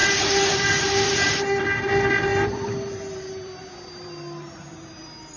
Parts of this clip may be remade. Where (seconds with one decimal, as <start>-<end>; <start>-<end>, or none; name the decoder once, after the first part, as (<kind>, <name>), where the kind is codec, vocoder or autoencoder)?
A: 0.0-1.6 (vocoder, BigVGAN v2); 2.3-5.4